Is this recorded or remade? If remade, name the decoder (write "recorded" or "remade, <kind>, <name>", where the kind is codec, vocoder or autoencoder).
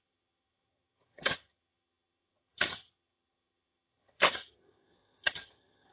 remade, vocoder, HiFi-GAN